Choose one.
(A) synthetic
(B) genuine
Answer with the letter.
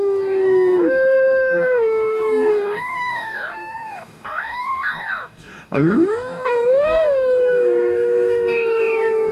A